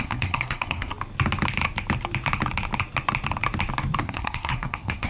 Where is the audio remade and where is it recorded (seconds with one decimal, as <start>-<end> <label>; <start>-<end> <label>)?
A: 0.0-0.9 remade; 0.9-4.0 recorded; 4.0-5.1 remade